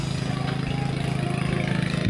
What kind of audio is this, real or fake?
real